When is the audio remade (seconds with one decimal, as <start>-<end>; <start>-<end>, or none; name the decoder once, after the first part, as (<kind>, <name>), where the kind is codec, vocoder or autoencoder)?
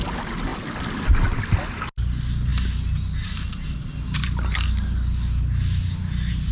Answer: none